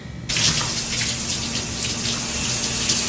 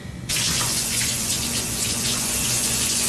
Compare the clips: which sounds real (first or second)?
first